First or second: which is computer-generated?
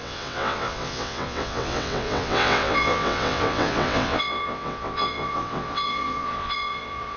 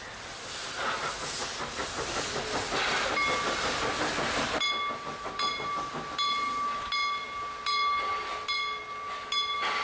first